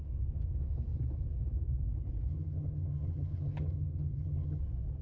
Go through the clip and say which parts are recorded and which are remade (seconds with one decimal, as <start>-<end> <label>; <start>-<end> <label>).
0.0-2.3 recorded; 2.3-4.6 remade; 4.6-5.0 recorded